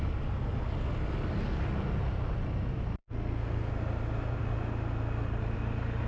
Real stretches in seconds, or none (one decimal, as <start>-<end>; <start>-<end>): 0.0-3.0; 3.7-6.1